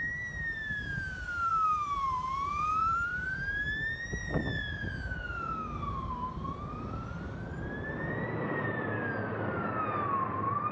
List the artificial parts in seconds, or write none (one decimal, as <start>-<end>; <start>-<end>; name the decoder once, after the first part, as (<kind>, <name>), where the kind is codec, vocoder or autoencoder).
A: 1.5-3.4 (vocoder, BigVGAN v2)